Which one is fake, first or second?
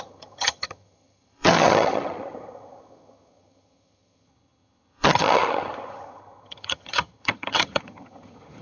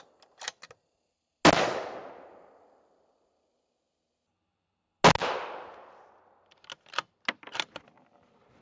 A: first